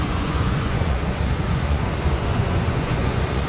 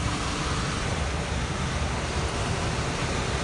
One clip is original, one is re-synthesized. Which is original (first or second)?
second